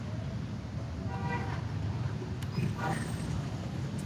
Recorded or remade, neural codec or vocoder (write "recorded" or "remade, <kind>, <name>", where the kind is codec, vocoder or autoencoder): recorded